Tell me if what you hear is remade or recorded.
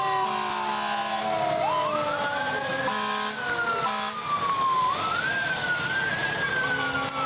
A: recorded